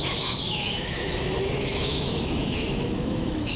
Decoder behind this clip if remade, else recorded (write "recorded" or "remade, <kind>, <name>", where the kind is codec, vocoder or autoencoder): remade, autoencoder, DAC-VAE